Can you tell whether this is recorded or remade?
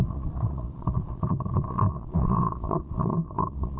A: remade